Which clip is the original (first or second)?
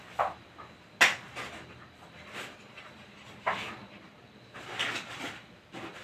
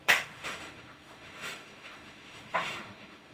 first